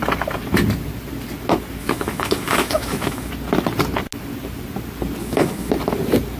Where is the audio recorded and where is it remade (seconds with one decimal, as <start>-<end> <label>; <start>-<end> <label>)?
0.0-1.8 recorded; 1.8-3.3 remade; 3.3-5.2 recorded; 5.2-5.7 remade; 5.7-6.4 recorded